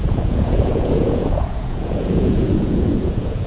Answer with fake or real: fake